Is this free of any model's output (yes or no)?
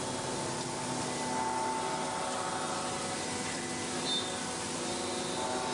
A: yes